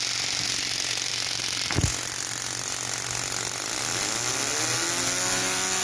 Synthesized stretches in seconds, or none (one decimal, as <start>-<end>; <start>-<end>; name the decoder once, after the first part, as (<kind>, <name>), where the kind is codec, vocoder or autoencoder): none